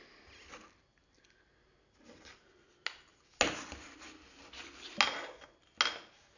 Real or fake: real